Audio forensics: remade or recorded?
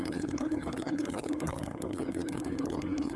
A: remade